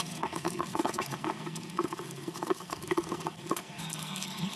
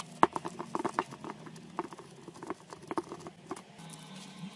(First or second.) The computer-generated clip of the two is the first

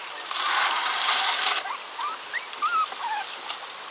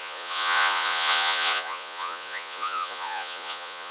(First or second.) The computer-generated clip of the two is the second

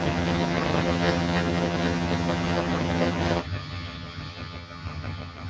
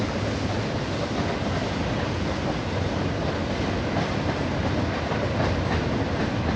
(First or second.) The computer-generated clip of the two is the first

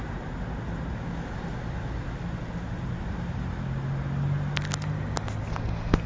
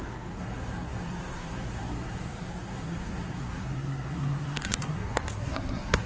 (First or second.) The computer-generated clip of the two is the second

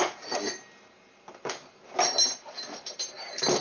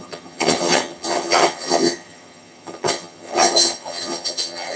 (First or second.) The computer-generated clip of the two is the second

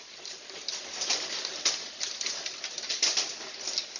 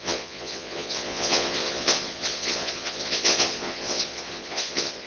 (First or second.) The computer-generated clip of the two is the second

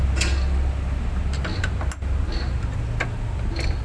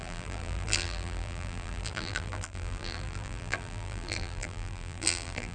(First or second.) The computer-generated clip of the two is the second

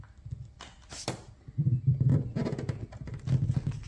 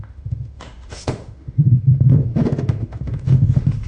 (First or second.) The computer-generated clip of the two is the second